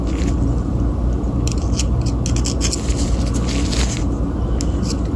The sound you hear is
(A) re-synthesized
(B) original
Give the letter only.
B